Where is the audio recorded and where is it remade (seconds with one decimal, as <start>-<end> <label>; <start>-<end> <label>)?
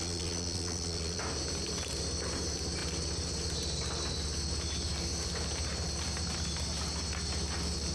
0.0-1.2 remade; 1.2-7.9 recorded